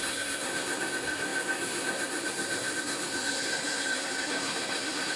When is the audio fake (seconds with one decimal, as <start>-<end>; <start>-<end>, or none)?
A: 0.0-5.2